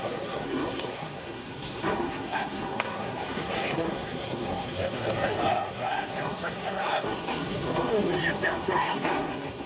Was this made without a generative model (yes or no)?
no